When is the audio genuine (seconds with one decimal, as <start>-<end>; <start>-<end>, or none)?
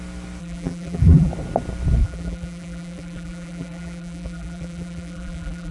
0.0-0.4; 1.3-2.0